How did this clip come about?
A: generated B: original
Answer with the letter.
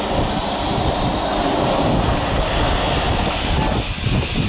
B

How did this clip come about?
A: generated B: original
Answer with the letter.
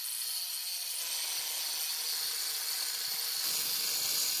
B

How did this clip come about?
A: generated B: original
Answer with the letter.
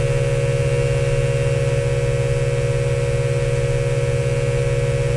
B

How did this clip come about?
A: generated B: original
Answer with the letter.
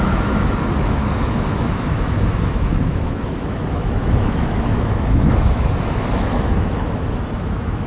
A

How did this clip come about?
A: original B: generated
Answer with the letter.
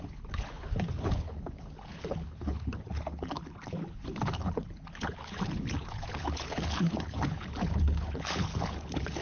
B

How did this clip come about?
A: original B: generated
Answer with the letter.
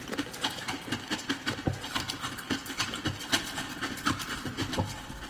A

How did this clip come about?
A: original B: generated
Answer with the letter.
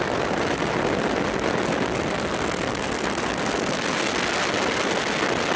A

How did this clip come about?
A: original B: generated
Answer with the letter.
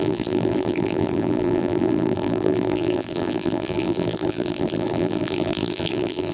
B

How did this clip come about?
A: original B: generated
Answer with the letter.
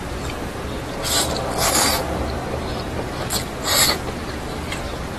A